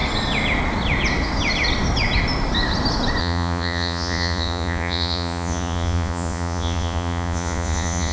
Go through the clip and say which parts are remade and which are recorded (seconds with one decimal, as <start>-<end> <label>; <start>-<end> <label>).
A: 0.0-3.2 recorded; 3.2-8.1 remade